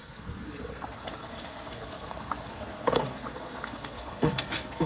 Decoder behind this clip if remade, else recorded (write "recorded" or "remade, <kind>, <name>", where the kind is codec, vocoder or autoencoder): remade, codec, SNAC